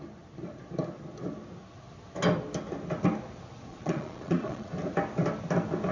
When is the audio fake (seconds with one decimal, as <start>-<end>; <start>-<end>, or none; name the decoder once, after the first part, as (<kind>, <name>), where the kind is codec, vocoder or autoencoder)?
3.7-4.7 (vocoder, Vocos)

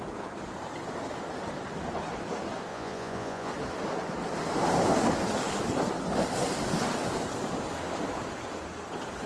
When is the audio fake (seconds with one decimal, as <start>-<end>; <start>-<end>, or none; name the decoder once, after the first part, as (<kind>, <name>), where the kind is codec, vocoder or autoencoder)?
2.7-3.5 (vocoder, Vocos)

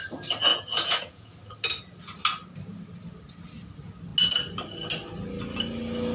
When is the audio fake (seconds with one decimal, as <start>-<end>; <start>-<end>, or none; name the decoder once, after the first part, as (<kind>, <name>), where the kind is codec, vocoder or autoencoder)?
0.5-1.3 (vocoder, Vocos)

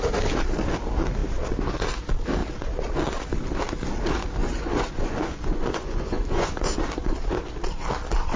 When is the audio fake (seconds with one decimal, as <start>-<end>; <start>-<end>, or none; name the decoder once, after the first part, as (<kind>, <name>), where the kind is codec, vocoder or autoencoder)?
4.4-6.8 (vocoder, Vocos)